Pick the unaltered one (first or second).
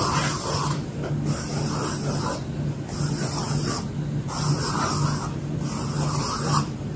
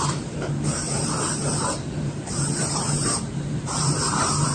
first